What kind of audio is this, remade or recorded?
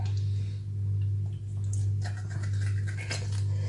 recorded